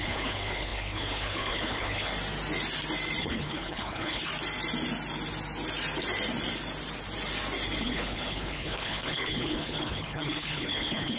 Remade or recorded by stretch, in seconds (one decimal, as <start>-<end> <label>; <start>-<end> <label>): 0.0-2.1 remade; 2.1-3.2 recorded; 3.2-4.3 remade; 4.3-7.8 recorded; 7.8-11.2 remade